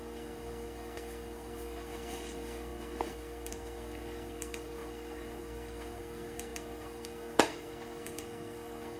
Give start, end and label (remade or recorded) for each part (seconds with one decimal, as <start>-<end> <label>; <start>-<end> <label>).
0.0-9.0 remade